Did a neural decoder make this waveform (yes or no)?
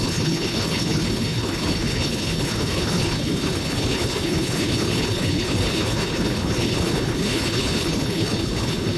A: yes